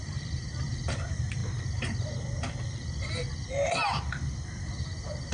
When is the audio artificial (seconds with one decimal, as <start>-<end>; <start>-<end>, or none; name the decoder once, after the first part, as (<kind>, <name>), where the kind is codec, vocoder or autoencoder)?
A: 0.0-1.4 (vocoder, BigVGAN v2); 4.6-5.3